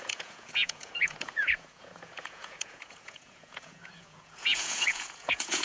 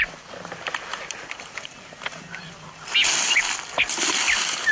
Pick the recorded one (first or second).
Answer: second